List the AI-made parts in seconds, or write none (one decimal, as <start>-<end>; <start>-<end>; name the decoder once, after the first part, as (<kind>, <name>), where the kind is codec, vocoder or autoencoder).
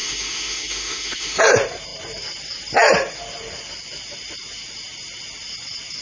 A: 0.0-1.4 (autoencoder, DAC-VAE)